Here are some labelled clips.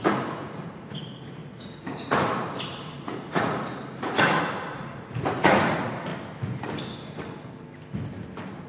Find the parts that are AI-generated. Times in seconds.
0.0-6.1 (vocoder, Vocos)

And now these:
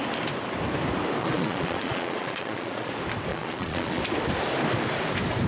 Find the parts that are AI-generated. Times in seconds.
1.2-2.9 (vocoder, Vocos); 3.3-4.0

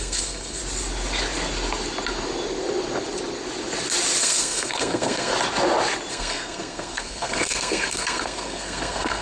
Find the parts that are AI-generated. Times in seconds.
0.0-0.6 (codec, SNAC); 4.2-5.3; 6.1-9.2

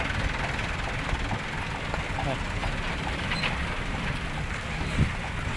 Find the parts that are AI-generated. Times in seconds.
2.6-4.4 (vocoder, BigVGAN v2)